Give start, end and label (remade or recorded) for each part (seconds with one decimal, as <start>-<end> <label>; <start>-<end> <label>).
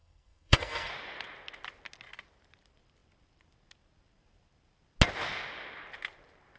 0.0-0.9 remade; 0.9-6.6 recorded